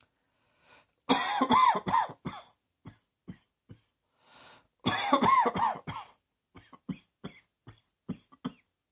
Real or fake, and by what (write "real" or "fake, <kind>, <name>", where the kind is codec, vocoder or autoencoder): real